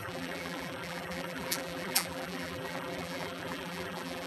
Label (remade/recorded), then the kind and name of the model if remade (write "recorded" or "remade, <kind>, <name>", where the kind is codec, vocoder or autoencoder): remade, vocoder, BigVGAN v2